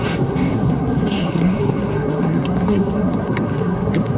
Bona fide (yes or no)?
no